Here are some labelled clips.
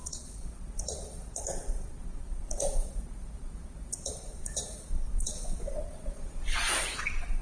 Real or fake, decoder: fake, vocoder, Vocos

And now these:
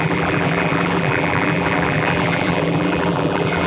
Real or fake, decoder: fake, vocoder, BigVGAN v2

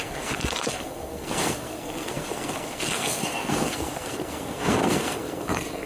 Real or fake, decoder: fake, codec, SNAC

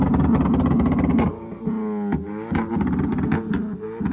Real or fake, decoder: real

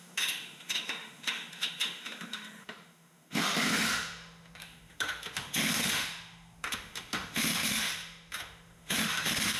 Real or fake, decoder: fake, autoencoder, DAC-VAE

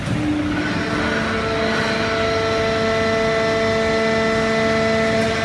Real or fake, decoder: real